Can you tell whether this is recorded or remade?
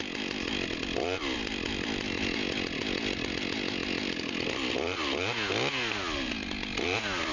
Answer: recorded